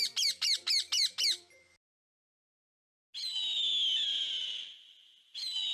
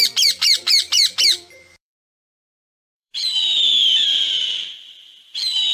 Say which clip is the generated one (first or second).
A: second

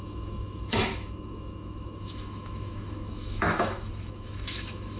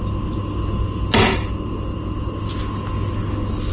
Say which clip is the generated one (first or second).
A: first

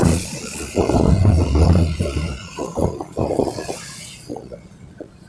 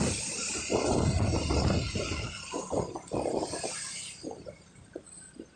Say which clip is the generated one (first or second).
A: first